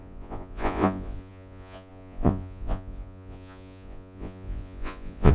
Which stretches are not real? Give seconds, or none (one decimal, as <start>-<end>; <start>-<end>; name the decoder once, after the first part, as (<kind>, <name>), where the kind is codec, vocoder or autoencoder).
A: 0.0-5.3 (vocoder, Vocos)